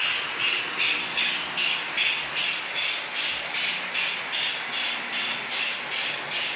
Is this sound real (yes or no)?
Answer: yes